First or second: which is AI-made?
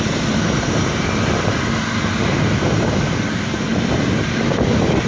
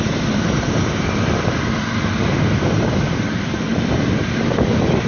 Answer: second